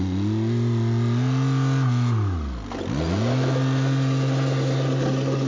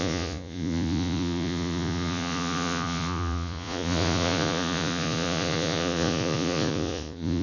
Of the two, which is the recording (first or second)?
first